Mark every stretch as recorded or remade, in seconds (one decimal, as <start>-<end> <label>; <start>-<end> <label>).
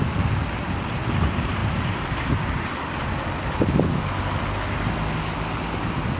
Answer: 0.0-1.6 recorded; 1.6-3.1 remade; 3.1-6.2 recorded